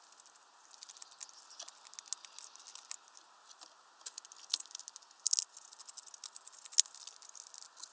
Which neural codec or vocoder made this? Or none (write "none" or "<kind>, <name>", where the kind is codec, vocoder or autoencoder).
none